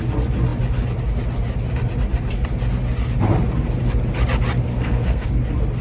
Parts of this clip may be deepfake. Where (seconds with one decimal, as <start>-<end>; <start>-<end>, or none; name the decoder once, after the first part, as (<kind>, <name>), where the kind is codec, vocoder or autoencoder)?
4.7-5.3 (codec, SNAC)